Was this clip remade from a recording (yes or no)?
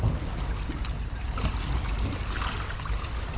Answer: no